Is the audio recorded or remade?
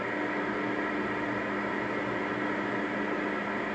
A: recorded